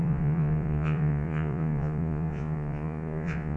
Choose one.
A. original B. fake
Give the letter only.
B